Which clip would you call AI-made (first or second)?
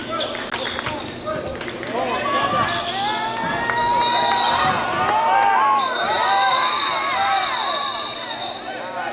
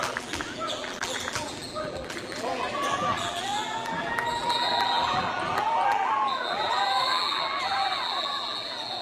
second